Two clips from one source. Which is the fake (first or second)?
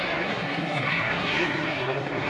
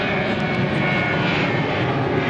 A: first